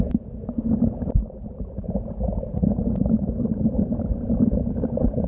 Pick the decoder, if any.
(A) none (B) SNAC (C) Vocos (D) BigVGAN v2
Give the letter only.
D